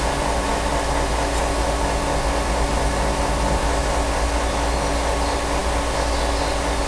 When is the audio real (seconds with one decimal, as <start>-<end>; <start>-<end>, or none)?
0.0-6.9